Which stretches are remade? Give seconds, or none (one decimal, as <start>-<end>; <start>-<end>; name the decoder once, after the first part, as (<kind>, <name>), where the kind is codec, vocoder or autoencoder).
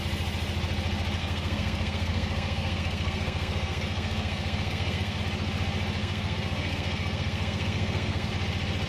1.2-5.2 (codec, SNAC); 6.0-8.3